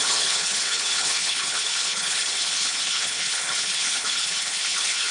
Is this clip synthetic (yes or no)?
yes